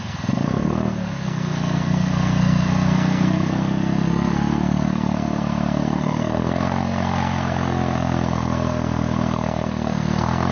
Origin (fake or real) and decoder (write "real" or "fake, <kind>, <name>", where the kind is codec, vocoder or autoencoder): fake, codec, SNAC